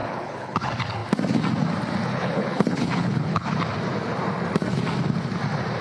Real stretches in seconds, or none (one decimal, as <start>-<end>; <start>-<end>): 0.6-2.1; 3.5-5.8